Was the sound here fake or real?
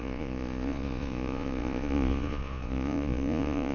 fake